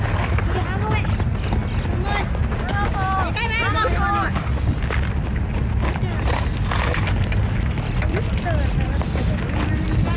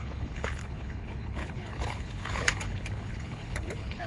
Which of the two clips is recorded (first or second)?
first